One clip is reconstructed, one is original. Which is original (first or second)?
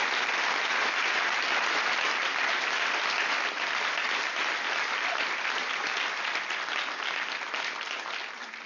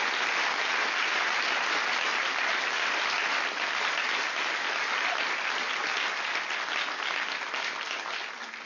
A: second